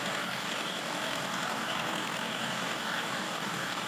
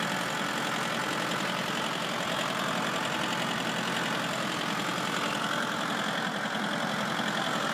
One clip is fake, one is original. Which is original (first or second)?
second